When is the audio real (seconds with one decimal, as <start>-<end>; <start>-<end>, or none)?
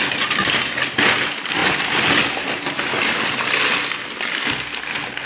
0.0-5.3